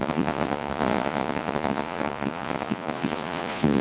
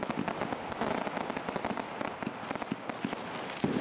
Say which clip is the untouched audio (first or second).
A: second